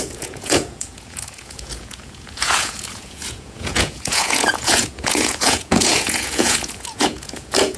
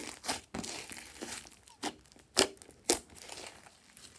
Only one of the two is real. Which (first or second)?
second